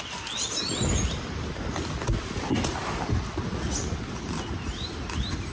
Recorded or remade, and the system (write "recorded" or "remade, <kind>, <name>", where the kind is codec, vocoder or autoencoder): recorded